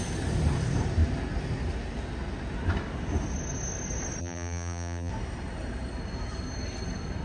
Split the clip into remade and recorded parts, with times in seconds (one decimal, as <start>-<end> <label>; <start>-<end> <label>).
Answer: 0.0-4.2 recorded; 4.2-5.1 remade; 5.1-7.2 recorded